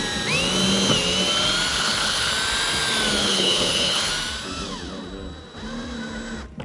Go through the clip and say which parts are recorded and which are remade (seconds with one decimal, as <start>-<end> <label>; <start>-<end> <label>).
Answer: 0.0-1.7 recorded; 1.7-2.3 remade; 2.3-3.2 recorded; 3.2-4.1 remade; 4.1-6.6 recorded